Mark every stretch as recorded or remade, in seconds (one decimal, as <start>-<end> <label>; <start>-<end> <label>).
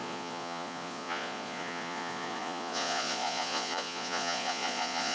0.0-5.1 remade